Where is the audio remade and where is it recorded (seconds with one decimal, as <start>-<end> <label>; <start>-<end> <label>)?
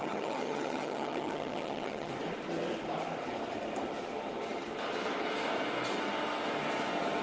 0.0-2.1 remade; 2.1-7.2 recorded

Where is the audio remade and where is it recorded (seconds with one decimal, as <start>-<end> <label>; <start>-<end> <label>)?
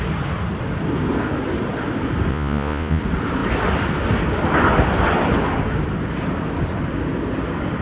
0.0-2.3 recorded; 2.3-3.0 remade; 3.0-7.8 recorded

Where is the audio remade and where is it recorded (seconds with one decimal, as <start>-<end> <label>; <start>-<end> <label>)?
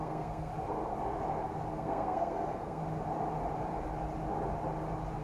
0.0-0.5 remade; 0.5-1.7 recorded; 1.7-2.8 remade; 2.8-5.2 recorded